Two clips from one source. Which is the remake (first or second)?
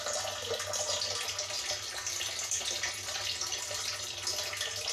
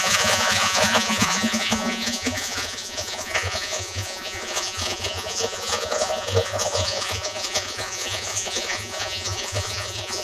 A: second